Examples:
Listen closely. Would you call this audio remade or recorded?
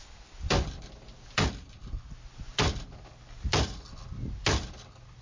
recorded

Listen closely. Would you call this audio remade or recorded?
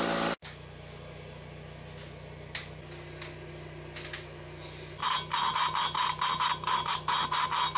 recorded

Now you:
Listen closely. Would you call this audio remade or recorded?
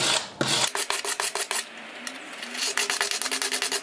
recorded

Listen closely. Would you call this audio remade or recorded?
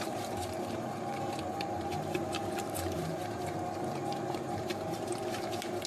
remade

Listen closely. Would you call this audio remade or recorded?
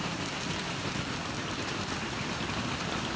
recorded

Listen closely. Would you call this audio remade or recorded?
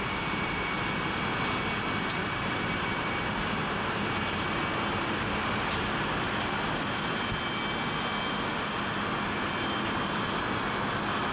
recorded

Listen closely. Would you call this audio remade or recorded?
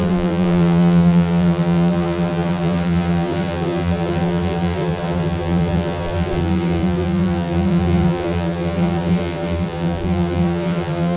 remade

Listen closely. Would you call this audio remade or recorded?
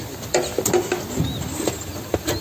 recorded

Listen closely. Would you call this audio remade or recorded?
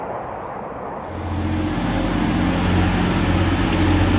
recorded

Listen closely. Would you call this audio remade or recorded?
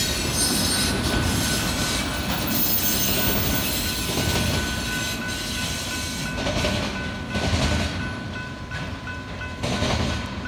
recorded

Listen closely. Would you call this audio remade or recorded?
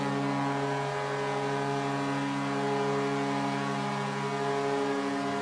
recorded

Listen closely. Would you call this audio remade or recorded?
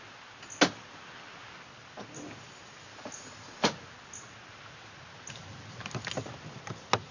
recorded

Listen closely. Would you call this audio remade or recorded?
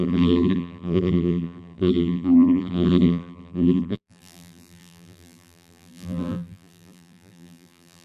remade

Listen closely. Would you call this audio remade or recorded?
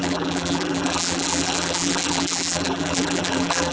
remade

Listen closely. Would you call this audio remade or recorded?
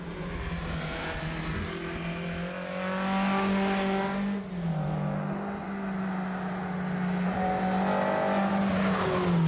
recorded